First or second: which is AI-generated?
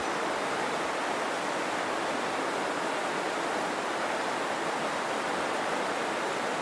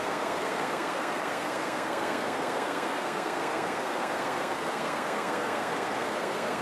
second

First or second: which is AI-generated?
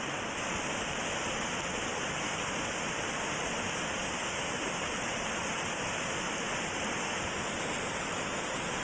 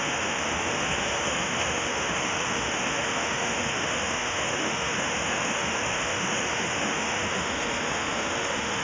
second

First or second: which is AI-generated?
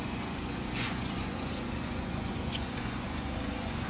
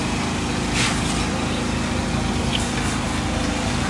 first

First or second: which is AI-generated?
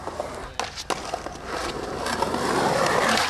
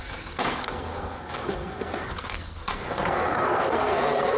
second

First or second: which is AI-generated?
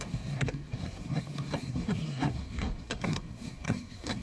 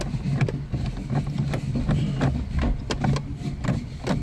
first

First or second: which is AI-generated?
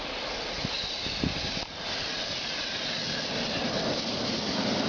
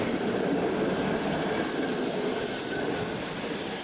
second